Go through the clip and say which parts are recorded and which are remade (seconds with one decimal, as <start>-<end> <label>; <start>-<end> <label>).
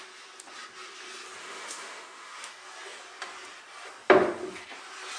0.0-1.4 recorded; 1.4-2.5 remade; 2.5-5.2 recorded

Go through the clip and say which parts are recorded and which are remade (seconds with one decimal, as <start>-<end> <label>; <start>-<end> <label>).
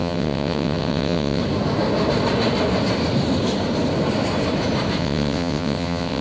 0.0-1.4 remade; 1.4-5.0 recorded; 5.0-6.2 remade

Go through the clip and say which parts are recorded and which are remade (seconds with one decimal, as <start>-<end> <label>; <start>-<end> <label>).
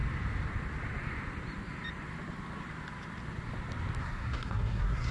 0.0-4.0 recorded; 4.0-5.1 remade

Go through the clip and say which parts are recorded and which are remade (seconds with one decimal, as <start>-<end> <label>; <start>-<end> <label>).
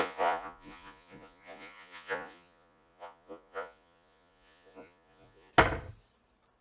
0.0-5.5 remade; 5.5-6.6 recorded